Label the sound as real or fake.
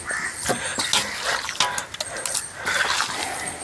real